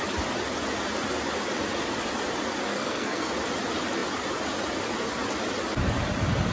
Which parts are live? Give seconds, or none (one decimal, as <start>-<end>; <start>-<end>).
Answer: 0.0-2.7; 3.3-6.5